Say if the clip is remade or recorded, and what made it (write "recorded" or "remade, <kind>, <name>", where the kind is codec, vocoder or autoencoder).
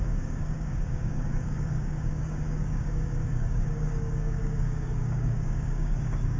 remade, codec, DAC